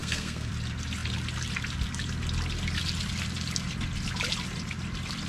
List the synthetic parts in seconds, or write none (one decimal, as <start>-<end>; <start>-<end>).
0.0-0.5